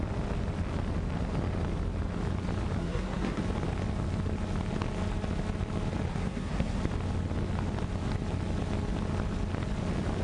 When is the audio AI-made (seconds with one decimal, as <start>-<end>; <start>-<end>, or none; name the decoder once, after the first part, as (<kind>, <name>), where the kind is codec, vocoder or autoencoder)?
2.8-3.4 (codec, SNAC); 6.1-6.8